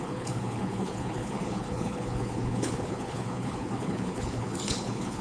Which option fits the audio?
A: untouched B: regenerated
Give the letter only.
B